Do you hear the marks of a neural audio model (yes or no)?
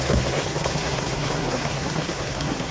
yes